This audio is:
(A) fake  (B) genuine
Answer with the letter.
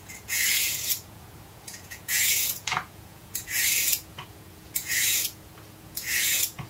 A